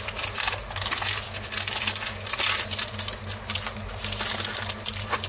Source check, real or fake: real